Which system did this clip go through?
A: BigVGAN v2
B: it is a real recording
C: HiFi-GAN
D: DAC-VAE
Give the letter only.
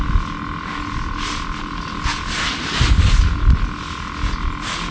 B